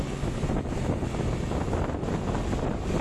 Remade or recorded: recorded